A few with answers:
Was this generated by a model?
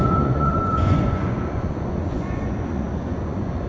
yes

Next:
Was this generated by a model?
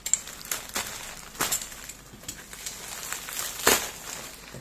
no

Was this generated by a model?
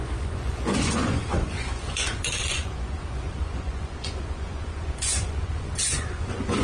yes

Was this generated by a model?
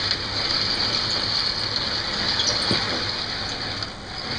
no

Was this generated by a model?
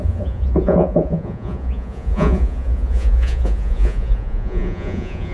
yes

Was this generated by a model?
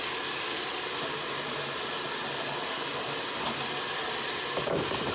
no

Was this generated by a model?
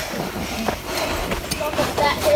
no